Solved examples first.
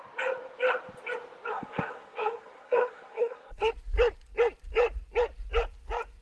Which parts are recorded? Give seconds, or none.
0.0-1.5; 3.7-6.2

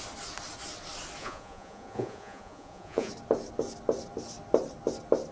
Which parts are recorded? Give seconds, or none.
0.0-1.2; 3.1-5.3

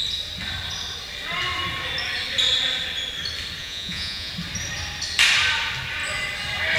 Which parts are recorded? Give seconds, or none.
0.0-3.6; 4.3-6.8

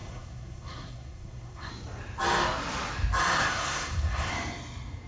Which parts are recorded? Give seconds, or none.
1.7-3.4; 4.3-5.1

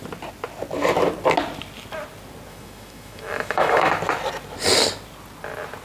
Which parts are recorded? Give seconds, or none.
0.0-2.5; 3.9-5.8

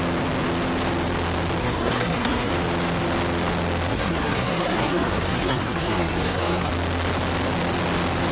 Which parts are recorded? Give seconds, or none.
0.0-1.6; 2.5-3.9; 6.7-8.3

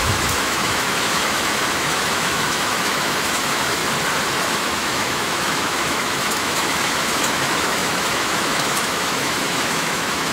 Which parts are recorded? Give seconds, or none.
3.8-4.4

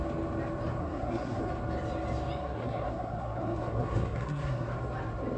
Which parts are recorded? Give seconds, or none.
0.0-0.8; 1.4-2.4; 4.7-5.4